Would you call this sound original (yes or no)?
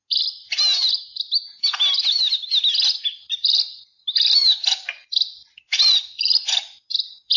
yes